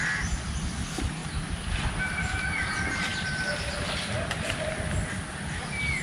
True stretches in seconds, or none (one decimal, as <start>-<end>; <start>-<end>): 0.0-6.0